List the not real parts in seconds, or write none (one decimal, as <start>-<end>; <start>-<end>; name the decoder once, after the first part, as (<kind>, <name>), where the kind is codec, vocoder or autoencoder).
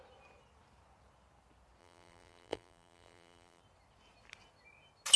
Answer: 1.8-3.6 (vocoder, BigVGAN v2)